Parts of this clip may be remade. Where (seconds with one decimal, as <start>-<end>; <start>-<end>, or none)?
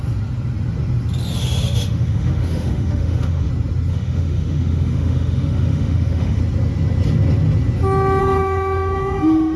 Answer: 1.4-3.5; 3.9-6.4; 8.2-9.6